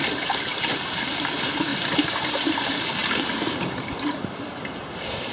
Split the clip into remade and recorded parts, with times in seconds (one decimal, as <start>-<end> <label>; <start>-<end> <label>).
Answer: 0.0-1.0 remade; 1.0-1.7 recorded; 1.7-5.3 remade